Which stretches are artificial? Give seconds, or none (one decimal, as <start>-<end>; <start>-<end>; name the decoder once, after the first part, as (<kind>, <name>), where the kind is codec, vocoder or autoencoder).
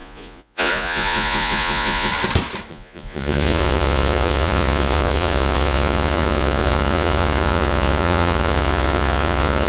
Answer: 0.0-2.1 (vocoder, Vocos); 2.7-9.7